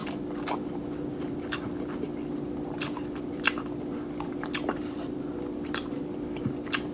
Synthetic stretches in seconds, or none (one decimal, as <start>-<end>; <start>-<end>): none

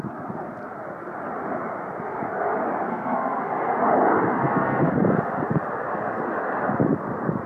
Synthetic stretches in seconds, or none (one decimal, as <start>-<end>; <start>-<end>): 2.9-3.8; 4.4-4.9